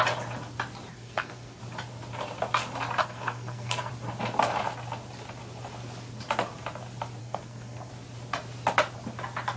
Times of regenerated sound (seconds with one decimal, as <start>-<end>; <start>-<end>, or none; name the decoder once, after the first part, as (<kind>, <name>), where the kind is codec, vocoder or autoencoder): 0.9-1.6 (codec, SNAC); 3.0-3.9; 7.2-7.9